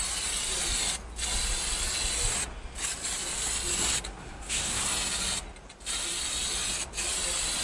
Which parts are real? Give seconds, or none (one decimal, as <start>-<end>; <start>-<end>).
0.0-4.2; 4.8-7.6